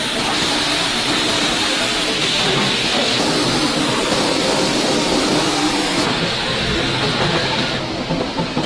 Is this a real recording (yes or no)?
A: yes